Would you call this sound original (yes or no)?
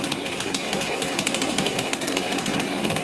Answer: no